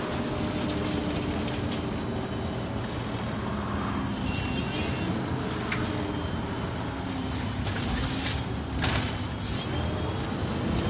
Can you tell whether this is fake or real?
real